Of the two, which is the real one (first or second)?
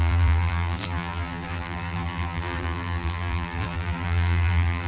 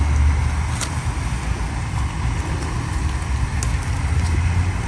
second